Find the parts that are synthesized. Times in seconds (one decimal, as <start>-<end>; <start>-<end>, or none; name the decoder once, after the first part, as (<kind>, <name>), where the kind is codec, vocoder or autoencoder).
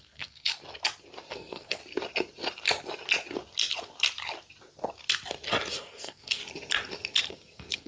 0.0-0.5 (codec, SNAC); 1.3-1.8; 5.7-6.4; 7.3-7.9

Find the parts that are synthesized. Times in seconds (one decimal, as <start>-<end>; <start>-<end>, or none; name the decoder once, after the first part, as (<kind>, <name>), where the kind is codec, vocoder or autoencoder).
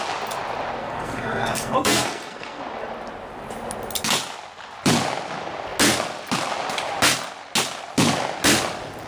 0.8-2.6 (codec, SNAC)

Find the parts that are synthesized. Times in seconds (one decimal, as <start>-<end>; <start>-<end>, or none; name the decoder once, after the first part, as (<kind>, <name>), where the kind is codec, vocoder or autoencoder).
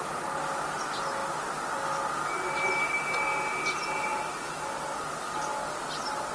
none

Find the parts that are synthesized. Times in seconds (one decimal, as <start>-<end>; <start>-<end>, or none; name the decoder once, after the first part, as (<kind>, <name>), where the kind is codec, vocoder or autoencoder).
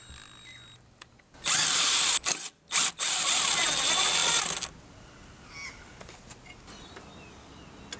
none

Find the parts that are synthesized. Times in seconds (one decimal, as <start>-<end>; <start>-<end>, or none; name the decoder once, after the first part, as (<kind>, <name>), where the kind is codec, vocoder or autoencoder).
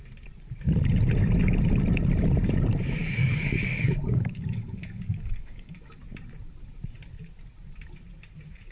3.0-6.0 (codec, DAC)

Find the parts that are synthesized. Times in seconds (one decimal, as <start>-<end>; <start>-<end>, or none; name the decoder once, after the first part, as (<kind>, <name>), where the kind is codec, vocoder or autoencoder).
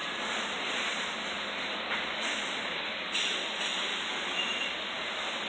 1.9-5.5 (vocoder, BigVGAN v2)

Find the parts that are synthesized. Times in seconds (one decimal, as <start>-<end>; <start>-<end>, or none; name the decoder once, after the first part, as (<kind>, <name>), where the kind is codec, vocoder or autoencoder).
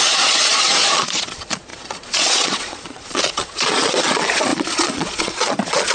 0.0-5.9 (vocoder, Vocos)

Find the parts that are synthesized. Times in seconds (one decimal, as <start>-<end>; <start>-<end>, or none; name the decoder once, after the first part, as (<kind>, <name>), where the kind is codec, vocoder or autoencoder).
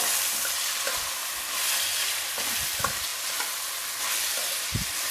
none